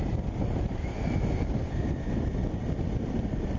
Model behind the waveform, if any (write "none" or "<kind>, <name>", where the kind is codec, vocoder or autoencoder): none